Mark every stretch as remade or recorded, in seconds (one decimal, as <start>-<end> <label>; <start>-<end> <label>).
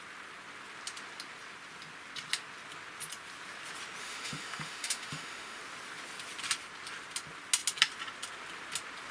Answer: 0.0-4.0 recorded; 4.0-5.6 remade; 5.6-9.1 recorded